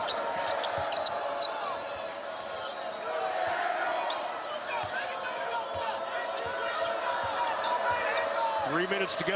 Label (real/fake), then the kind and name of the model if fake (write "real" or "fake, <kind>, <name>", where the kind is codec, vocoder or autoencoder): real